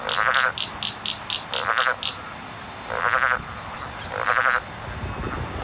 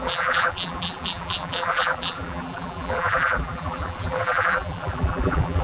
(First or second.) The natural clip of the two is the first